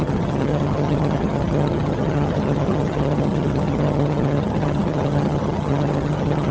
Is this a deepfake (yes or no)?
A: yes